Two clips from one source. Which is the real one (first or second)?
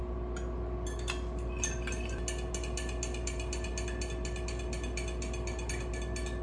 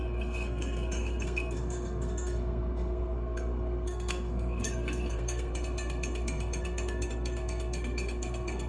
first